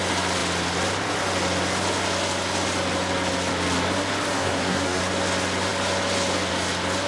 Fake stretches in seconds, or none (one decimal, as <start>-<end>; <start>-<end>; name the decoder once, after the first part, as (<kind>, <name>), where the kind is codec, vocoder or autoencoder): 4.3-5.0 (codec, SNAC)